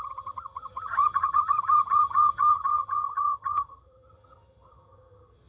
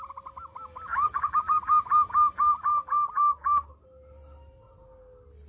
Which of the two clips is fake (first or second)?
first